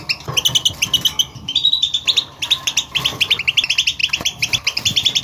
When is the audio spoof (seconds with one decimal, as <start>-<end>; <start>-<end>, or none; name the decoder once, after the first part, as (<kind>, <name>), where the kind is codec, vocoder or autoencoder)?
1.6-2.5 (vocoder, BigVGAN v2); 4.0-5.2